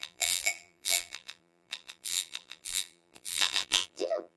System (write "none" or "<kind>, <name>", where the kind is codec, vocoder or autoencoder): vocoder, BigVGAN v2